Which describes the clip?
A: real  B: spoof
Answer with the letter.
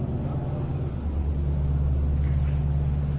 A